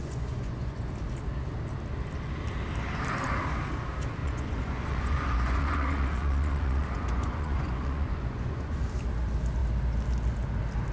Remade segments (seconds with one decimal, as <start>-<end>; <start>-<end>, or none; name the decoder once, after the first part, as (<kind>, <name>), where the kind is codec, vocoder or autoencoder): 0.0-0.9 (vocoder, Vocos); 4.2-8.8

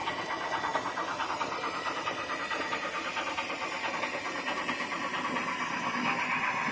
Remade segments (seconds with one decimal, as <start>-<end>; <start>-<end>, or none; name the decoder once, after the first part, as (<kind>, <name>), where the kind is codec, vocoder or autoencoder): none

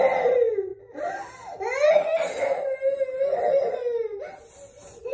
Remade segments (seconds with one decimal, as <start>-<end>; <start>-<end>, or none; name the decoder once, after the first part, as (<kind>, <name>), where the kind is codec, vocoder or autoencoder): none

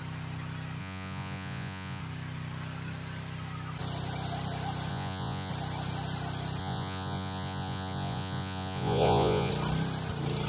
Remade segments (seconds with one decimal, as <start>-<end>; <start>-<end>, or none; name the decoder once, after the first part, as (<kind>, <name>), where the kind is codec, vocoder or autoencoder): 0.8-2.0 (vocoder, Vocos); 4.9-5.5; 6.6-9.5